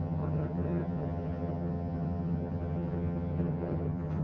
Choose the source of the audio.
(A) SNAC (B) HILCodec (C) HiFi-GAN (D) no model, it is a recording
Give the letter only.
C